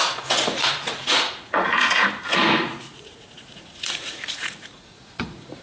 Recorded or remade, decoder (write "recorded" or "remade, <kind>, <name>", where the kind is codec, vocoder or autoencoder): remade, vocoder, Vocos